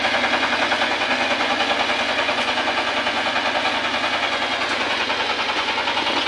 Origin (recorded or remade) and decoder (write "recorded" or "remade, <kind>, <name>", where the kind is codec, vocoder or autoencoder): remade, vocoder, Vocos